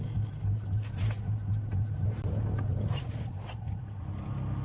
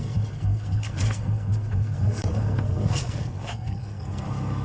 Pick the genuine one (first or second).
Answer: first